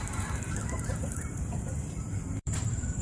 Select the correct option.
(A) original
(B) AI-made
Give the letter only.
B